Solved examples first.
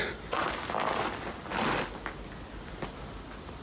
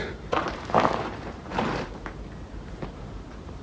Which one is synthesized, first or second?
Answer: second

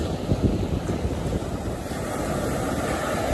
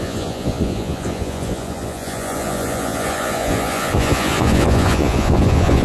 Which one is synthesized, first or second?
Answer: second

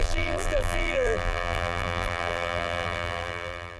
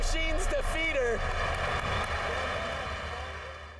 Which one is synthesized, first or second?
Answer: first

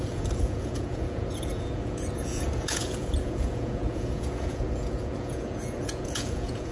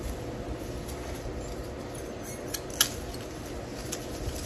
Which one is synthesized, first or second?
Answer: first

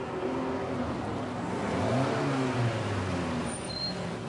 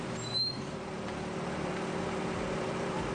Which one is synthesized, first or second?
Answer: second